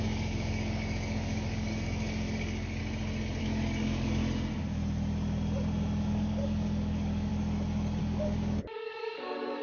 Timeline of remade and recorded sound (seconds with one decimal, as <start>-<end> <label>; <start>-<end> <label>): 0.0-2.8 remade; 2.8-3.4 recorded; 3.4-4.2 remade; 4.2-6.0 recorded; 6.0-7.3 remade; 7.3-8.0 recorded; 8.0-9.6 remade